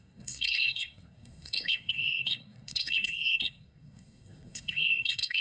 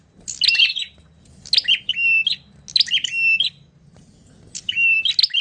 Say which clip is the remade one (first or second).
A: first